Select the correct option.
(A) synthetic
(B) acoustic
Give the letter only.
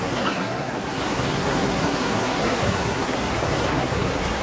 A